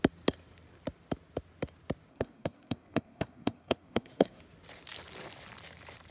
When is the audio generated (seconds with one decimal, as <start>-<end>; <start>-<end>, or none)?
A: 2.1-4.4